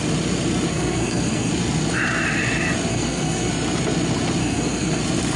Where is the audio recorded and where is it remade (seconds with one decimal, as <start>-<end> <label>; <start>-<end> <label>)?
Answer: 0.0-0.7 recorded; 0.7-1.5 remade; 1.5-2.9 recorded; 2.9-3.5 remade; 3.5-4.4 recorded; 4.4-5.0 remade; 5.0-5.4 recorded